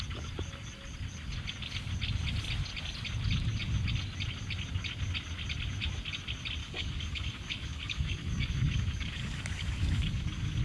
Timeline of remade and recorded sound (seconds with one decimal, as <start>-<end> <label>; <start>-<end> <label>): 0.0-6.6 recorded; 6.6-10.6 remade

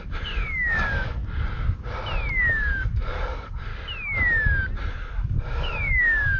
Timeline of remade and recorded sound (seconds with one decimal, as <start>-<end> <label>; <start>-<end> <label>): 0.0-1.2 remade; 1.2-2.3 recorded; 2.3-3.7 remade; 3.7-4.9 recorded; 4.9-6.4 remade

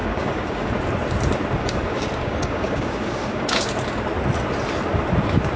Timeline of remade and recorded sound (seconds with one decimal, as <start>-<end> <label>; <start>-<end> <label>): 0.0-0.7 remade; 0.7-1.6 recorded; 1.6-3.6 remade; 3.6-5.6 recorded